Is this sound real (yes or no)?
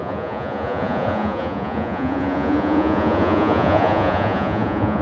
no